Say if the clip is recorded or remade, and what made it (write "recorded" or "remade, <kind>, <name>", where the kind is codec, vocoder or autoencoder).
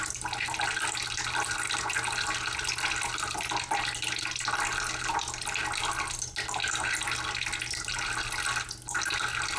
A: recorded